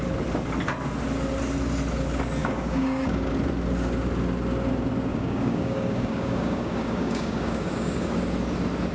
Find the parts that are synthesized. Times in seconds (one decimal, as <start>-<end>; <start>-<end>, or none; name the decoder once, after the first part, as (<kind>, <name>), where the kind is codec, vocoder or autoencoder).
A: 2.4-3.3 (codec, DAC); 5.1-8.2